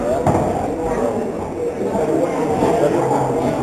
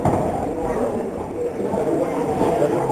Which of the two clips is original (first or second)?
first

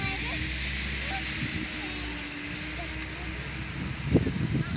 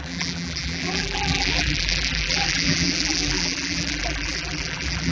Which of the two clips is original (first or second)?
first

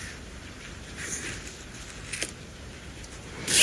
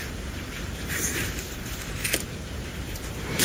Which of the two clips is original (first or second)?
first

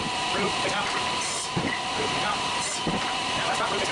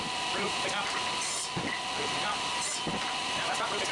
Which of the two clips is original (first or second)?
second